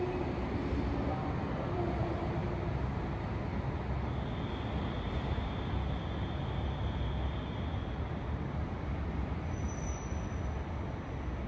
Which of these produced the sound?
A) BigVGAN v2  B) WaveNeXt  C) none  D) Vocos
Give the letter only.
C